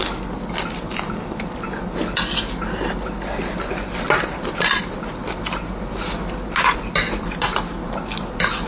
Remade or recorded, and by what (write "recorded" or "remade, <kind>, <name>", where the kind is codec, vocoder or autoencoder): recorded